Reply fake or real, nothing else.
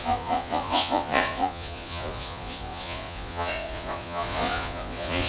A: fake